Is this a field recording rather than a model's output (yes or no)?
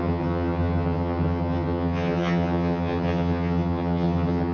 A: no